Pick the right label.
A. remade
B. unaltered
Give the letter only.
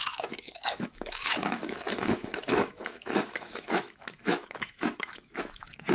A